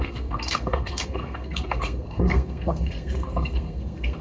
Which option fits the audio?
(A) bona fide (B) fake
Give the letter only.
B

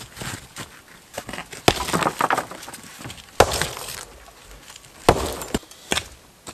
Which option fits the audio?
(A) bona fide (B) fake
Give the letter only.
A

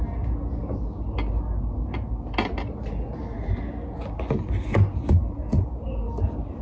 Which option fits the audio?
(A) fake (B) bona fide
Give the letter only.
B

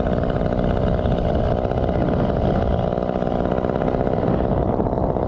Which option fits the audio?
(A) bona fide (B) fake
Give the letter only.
A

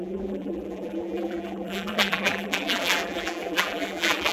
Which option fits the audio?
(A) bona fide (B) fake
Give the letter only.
B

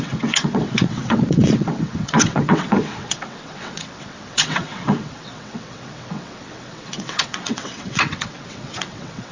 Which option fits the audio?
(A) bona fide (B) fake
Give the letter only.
B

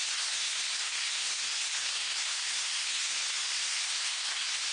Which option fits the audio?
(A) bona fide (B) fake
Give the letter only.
B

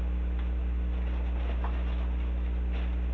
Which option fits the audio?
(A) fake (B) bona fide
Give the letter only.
B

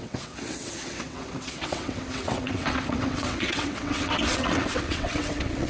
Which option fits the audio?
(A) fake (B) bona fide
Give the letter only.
A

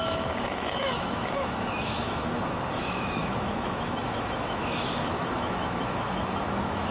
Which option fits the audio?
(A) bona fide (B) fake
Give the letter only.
B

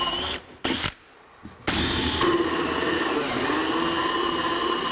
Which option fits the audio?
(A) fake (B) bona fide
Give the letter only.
B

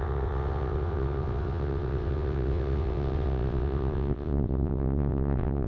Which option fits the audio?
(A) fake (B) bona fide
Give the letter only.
A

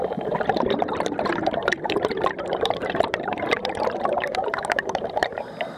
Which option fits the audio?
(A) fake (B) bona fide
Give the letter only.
A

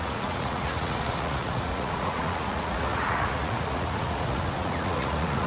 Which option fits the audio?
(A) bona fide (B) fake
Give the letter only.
B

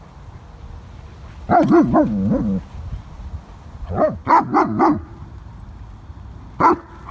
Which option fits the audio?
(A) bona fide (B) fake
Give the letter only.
A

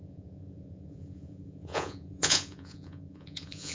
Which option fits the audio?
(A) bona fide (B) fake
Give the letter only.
B